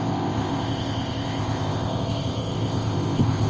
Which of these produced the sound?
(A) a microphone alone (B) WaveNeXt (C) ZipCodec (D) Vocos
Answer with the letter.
C